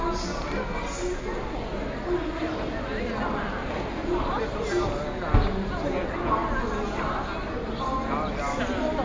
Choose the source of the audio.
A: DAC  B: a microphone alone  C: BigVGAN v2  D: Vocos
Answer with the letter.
B